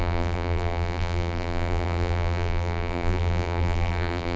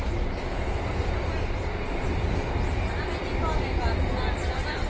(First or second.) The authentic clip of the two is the second